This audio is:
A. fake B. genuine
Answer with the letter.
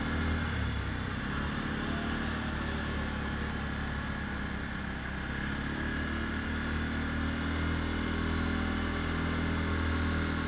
B